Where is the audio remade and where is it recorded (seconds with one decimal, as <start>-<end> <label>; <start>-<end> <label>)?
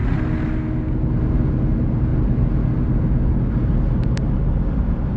0.0-5.2 recorded